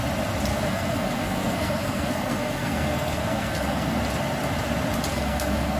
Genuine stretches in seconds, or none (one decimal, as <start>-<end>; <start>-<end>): 0.0-0.5; 4.0-5.1